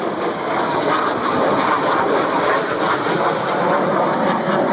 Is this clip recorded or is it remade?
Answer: recorded